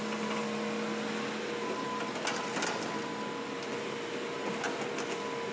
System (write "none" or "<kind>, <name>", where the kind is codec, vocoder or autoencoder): none